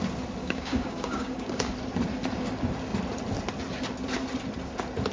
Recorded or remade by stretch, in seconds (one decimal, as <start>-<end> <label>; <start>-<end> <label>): 0.0-0.4 recorded; 0.4-1.7 remade; 1.7-5.1 recorded